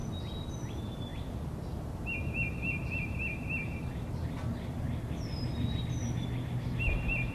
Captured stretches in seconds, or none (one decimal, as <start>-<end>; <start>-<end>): 0.0-7.3